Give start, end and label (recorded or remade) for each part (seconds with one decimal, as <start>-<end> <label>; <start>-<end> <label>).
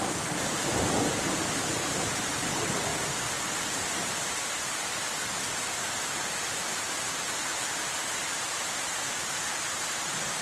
0.0-2.9 remade; 2.9-3.9 recorded; 3.9-5.0 remade; 5.0-5.5 recorded; 5.5-10.4 remade